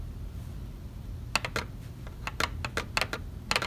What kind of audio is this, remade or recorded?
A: recorded